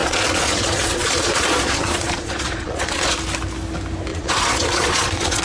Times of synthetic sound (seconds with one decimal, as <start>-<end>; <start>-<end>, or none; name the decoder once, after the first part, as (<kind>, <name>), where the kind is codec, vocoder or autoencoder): 0.0-3.2 (vocoder, Vocos); 4.1-5.4